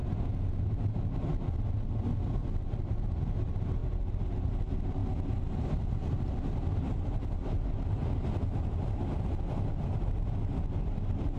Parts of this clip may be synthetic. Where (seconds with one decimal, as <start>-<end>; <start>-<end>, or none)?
2.4-3.8; 4.4-5.0; 5.6-8.0; 9.1-11.4